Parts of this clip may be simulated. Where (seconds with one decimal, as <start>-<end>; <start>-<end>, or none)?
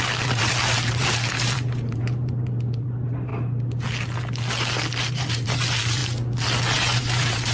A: 0.0-3.3; 5.1-6.0; 7.0-7.5